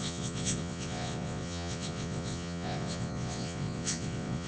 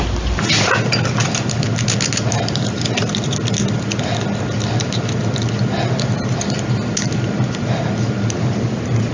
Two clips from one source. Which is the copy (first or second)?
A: first